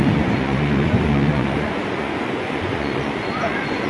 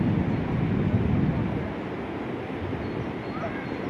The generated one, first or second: first